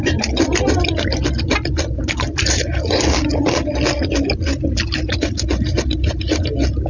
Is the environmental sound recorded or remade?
recorded